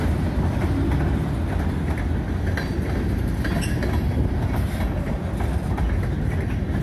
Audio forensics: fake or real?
real